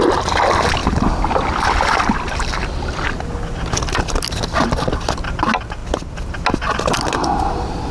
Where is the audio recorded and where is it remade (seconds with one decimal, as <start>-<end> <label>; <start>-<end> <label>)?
0.0-7.9 recorded